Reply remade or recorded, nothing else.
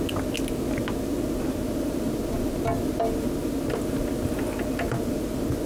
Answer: recorded